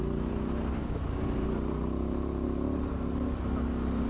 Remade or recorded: recorded